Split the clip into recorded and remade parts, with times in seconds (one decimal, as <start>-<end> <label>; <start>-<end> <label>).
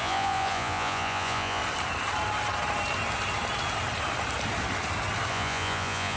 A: 0.0-1.6 remade; 1.6-5.3 recorded; 5.3-6.2 remade